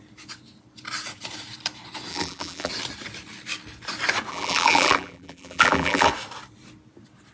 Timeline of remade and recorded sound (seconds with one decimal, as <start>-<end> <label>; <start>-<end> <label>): 0.0-2.1 recorded; 2.1-2.7 remade; 2.7-4.3 recorded; 4.3-6.1 remade; 6.1-7.3 recorded